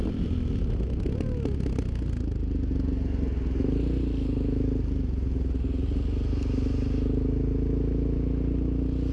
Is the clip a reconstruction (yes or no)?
no